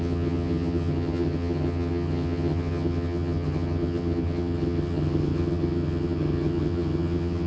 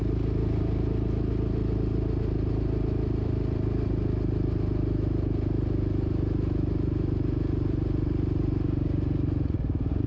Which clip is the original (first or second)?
second